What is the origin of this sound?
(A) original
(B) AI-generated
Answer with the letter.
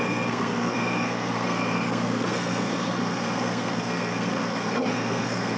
B